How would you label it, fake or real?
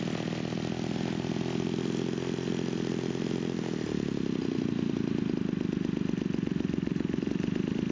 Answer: real